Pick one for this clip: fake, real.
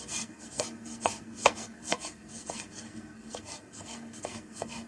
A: fake